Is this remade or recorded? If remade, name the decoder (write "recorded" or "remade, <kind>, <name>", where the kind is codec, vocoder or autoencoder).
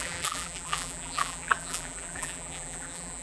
remade, vocoder, BigVGAN v2